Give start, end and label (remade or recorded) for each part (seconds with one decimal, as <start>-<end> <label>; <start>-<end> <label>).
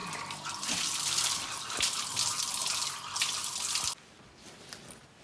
0.0-5.2 recorded